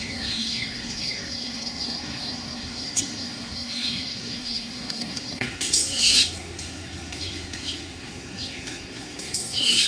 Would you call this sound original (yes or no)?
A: no